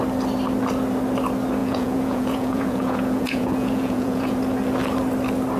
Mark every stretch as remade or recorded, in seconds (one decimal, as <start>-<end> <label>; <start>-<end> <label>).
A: 0.0-1.6 recorded; 1.6-4.4 remade; 4.4-5.6 recorded